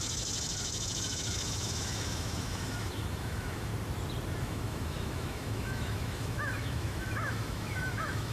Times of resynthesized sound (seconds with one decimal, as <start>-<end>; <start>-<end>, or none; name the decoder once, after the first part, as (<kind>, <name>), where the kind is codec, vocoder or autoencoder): 0.0-3.7 (autoencoder, DAC-VAE); 4.4-8.3

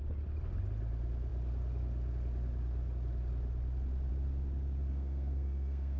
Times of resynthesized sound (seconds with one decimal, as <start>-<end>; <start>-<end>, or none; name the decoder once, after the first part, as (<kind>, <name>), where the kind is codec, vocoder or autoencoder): 4.9-6.0 (codec, SNAC)

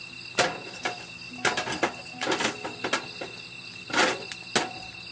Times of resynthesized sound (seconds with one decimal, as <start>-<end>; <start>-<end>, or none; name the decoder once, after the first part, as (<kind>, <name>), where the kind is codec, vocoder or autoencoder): none

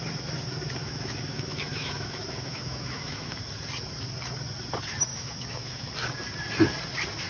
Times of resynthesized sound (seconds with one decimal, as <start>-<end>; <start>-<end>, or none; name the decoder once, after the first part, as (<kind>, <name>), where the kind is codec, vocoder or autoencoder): 0.8-3.4 (autoencoder, DAC-VAE); 5.1-5.9

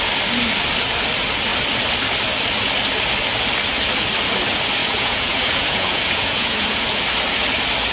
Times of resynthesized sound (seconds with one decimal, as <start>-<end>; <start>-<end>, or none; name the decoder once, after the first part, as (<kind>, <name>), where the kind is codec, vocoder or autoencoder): 4.8-6.8 (vocoder, Vocos)

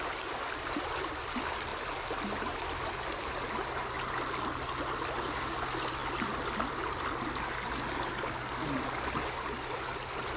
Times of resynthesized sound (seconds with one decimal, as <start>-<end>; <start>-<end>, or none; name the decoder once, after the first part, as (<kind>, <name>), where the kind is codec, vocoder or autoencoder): none